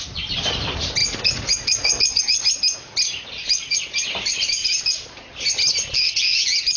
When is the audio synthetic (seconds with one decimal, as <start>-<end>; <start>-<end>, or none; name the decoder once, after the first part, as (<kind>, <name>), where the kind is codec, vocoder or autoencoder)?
1.0-2.2 (vocoder, Vocos)